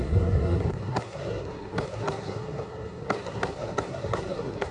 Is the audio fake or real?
fake